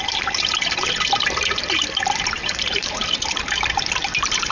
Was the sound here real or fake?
fake